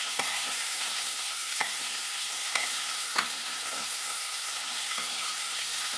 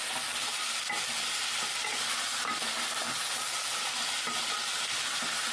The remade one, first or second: first